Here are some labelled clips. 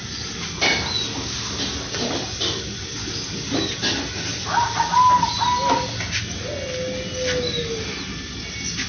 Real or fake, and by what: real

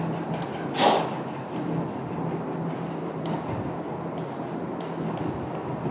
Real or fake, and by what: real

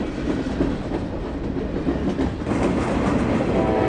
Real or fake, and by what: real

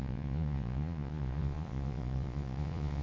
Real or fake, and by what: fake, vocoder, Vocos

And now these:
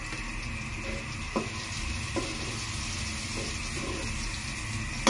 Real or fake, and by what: real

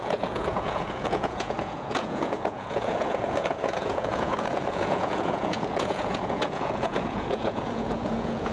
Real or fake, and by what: fake, vocoder, Vocos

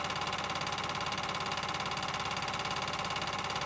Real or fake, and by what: real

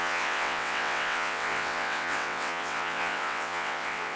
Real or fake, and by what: fake, vocoder, WaveNeXt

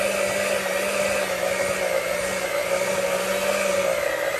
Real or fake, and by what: real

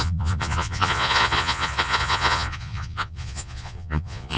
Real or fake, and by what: fake, vocoder, Vocos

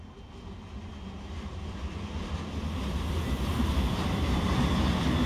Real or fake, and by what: real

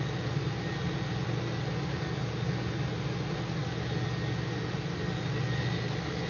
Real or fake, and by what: real